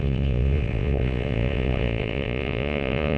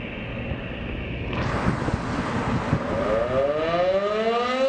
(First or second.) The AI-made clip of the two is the first